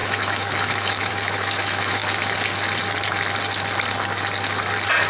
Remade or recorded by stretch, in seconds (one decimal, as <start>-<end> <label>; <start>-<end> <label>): 0.0-2.0 remade; 2.0-5.1 recorded